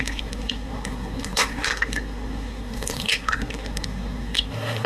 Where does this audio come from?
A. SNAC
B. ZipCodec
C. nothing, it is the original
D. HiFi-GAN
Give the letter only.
A